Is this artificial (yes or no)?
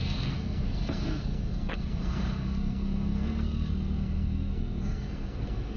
yes